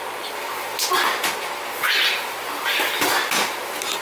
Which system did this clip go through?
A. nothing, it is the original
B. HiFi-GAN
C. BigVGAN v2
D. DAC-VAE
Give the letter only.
A